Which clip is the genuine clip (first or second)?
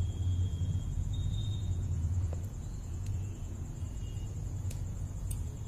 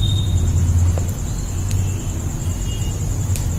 second